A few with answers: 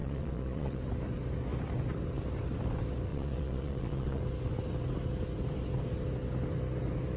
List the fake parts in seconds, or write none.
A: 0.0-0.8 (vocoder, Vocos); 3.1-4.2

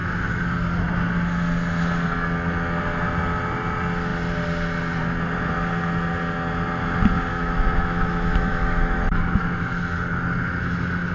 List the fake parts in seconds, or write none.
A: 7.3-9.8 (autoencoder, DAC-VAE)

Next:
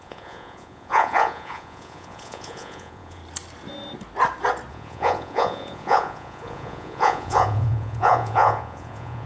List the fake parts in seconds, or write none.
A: 0.0-3.2 (vocoder, Vocos); 4.7-9.3

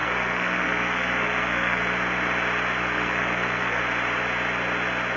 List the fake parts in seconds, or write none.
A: 0.0-1.8 (codec, SNAC); 2.8-3.8